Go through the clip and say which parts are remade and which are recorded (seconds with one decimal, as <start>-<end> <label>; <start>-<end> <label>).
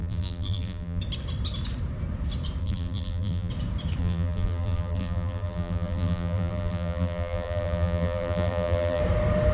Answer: 0.0-1.0 remade; 1.0-2.6 recorded; 2.6-3.5 remade; 3.5-4.0 recorded; 4.0-9.0 remade; 9.0-9.5 recorded